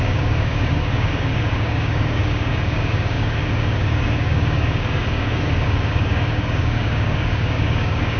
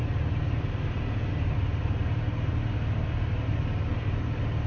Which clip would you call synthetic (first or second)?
first